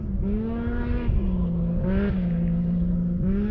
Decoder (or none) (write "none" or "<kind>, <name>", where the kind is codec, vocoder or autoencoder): none